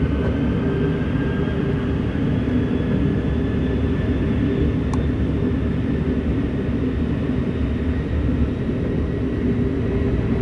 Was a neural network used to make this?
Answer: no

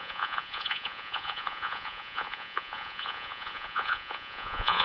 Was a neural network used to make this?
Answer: yes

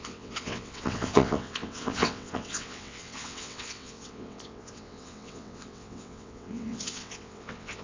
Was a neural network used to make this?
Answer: yes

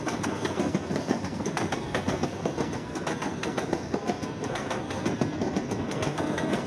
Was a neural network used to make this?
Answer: yes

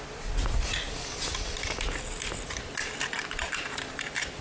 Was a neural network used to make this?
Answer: no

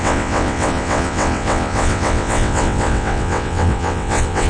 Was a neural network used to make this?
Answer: yes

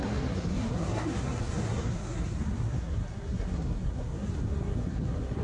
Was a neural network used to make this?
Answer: yes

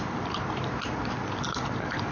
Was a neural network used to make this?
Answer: no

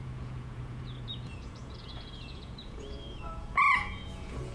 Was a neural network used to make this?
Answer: yes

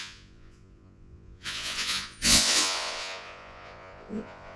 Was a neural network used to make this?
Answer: yes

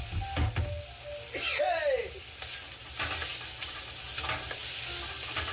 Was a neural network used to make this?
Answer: no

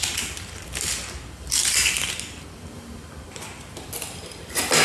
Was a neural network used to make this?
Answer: yes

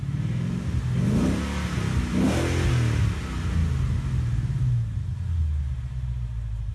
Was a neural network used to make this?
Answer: no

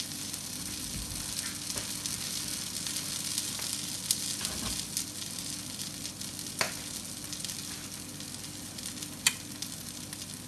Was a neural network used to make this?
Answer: no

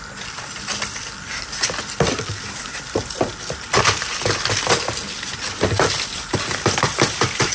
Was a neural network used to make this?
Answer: yes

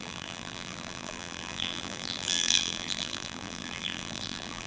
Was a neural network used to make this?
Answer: yes